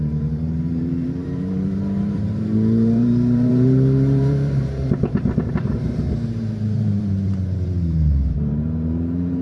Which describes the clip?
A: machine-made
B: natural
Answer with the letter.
A